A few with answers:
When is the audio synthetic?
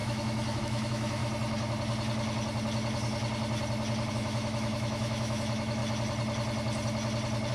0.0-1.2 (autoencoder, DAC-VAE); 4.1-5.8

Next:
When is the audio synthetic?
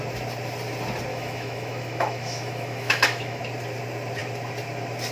1.1-3.4 (autoencoder, DAC-VAE)